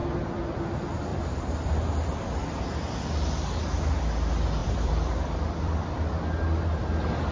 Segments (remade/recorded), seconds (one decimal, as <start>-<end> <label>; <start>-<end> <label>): 0.0-1.1 recorded; 1.1-2.8 remade; 2.8-4.6 recorded; 4.6-6.2 remade; 6.2-7.3 recorded